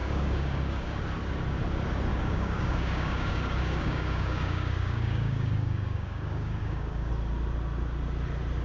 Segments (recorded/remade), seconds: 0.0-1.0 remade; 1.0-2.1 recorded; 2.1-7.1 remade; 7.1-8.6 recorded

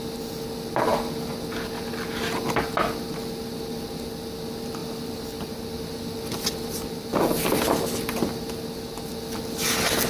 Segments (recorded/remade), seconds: 0.0-10.1 recorded

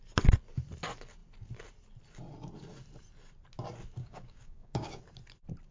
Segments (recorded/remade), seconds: 0.0-4.0 recorded; 4.0-5.0 remade; 5.0-5.7 recorded

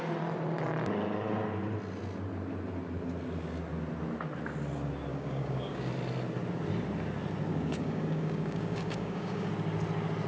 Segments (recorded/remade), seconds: 0.0-5.1 recorded; 5.1-5.9 remade; 5.9-7.5 recorded; 7.5-9.5 remade; 9.5-10.3 recorded

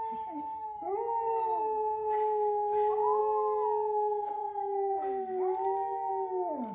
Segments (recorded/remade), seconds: 0.0-1.6 recorded; 1.6-3.2 remade; 3.2-4.4 recorded; 4.4-6.1 remade; 6.1-6.7 recorded

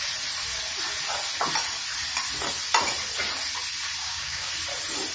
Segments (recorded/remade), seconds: 0.0-4.0 recorded; 4.0-4.5 remade; 4.5-5.1 recorded